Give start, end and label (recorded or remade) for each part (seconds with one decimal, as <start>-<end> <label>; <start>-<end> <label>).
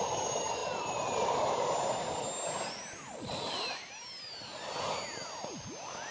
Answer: 0.0-6.1 recorded